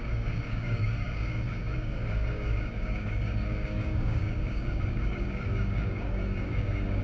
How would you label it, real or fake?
fake